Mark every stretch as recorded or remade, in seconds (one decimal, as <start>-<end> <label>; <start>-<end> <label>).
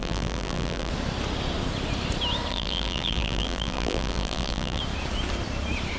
0.0-0.9 remade; 0.9-2.5 recorded; 2.5-4.8 remade; 4.8-6.0 recorded